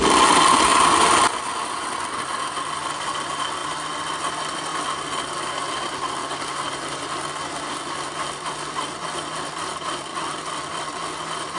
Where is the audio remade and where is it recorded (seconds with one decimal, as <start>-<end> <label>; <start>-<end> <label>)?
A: 0.0-11.6 recorded